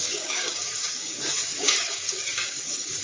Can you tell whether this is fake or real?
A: fake